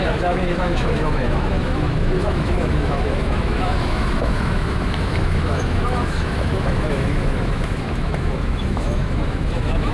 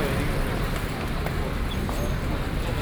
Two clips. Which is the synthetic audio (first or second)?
first